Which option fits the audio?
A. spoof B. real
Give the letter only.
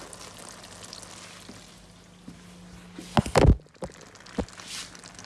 B